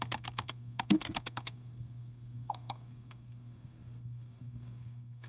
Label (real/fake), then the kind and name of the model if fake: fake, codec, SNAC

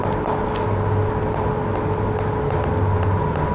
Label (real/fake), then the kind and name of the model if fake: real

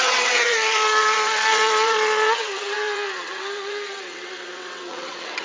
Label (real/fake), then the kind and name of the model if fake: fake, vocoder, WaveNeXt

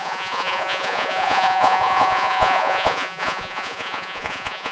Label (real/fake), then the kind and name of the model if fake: fake, vocoder, Vocos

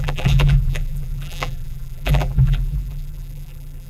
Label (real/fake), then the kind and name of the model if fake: fake, vocoder, BigVGAN v2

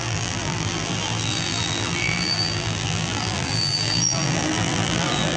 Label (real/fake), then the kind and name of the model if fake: fake, vocoder, BigVGAN v2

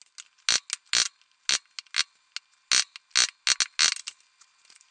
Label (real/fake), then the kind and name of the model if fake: real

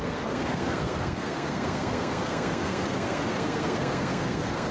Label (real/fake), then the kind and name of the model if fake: fake, codec, SNAC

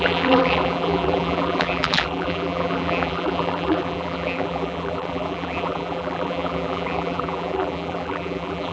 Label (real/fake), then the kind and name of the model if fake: fake, vocoder, BigVGAN v2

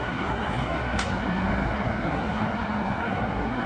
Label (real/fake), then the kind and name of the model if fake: fake, codec, SNAC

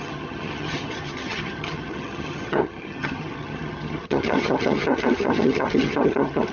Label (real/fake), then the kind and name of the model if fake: fake, vocoder, HiFi-GAN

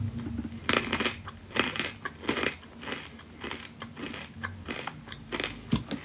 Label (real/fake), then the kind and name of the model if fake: real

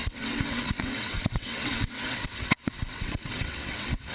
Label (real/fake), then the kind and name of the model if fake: fake, vocoder, WaveNeXt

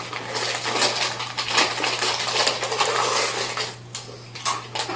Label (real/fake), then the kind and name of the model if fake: real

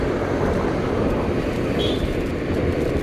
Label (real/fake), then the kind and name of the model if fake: real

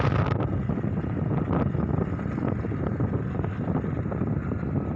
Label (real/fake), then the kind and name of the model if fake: real